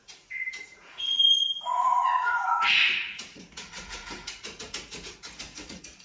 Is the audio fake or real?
fake